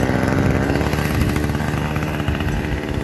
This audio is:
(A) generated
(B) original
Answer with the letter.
B